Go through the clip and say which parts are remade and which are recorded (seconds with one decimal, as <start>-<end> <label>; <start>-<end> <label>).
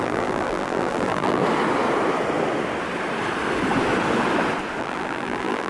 0.0-1.4 remade; 1.4-4.8 recorded; 4.8-5.7 remade